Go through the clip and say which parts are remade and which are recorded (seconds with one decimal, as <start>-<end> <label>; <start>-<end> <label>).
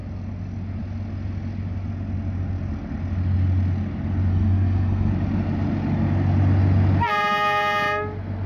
0.0-4.3 recorded; 4.3-5.1 remade; 5.1-8.5 recorded